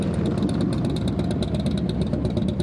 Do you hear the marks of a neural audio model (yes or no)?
no